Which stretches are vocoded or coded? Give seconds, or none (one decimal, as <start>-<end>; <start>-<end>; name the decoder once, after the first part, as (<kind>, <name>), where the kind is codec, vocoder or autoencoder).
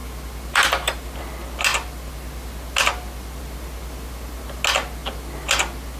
none